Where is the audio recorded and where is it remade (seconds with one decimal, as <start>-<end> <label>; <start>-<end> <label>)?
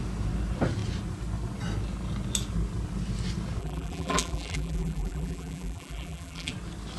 0.0-3.6 recorded; 3.6-6.5 remade; 6.5-7.0 recorded